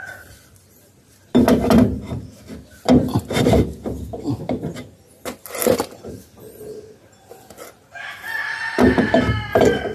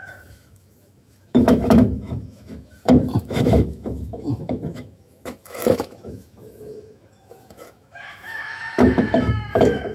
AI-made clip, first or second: second